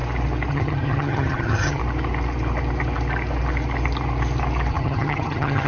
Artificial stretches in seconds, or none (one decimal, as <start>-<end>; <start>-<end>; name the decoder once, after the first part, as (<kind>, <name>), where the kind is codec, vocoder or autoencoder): 0.5-1.8 (vocoder, HiFi-GAN); 4.7-5.7